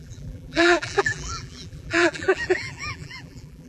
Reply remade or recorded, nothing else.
remade